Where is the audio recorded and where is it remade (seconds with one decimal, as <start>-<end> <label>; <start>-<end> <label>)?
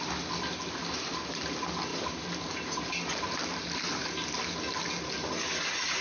0.0-6.0 recorded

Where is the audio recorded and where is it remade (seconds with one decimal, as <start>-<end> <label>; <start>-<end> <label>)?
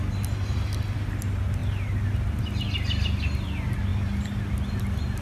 0.0-5.2 recorded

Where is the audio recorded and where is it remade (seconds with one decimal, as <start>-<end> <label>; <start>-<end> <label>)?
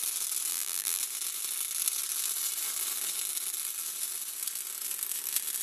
0.0-0.5 recorded; 0.5-1.0 remade; 1.0-5.6 recorded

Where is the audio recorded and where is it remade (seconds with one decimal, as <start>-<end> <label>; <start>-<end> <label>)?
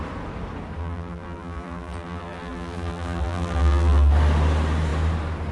0.0-0.8 recorded; 0.8-4.1 remade; 4.1-5.5 recorded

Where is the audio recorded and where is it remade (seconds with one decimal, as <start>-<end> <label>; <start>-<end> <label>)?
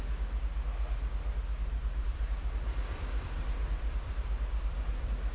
0.0-1.8 recorded; 1.8-5.3 remade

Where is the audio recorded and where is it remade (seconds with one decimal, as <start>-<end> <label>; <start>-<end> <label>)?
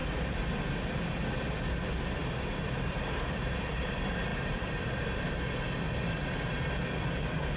0.0-4.3 recorded; 4.3-5.2 remade; 5.2-7.6 recorded